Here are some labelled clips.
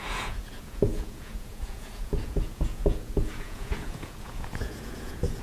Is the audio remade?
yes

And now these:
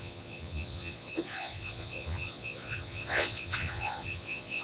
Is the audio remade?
yes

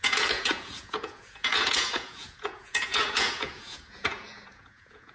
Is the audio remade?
yes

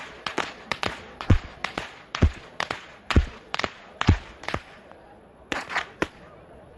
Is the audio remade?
yes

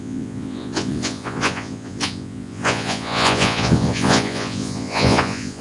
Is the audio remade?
yes